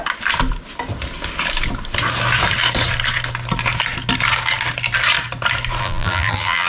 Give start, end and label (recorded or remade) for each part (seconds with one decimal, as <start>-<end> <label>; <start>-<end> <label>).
0.0-5.8 recorded; 5.8-6.7 remade